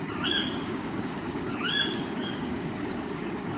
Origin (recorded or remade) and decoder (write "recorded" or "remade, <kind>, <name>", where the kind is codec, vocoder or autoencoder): remade, codec, DAC